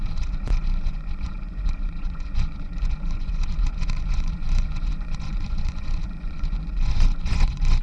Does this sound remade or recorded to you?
remade